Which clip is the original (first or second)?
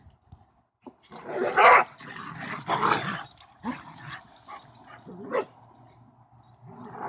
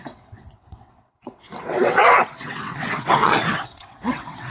first